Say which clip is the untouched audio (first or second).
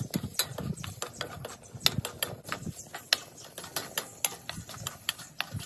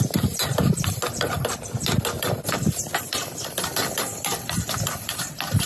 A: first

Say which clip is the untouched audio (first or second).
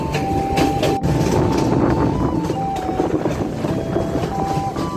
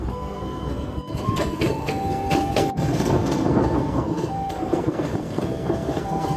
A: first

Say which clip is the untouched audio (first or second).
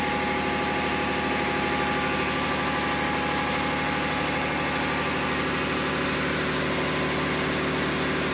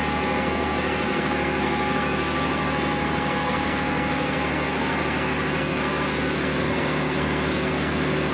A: first